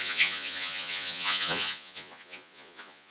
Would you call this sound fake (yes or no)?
yes